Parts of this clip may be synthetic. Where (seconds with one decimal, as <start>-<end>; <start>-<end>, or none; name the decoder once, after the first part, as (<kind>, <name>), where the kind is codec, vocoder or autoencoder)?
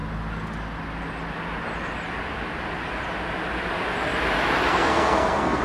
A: 4.7-5.6 (codec, SNAC)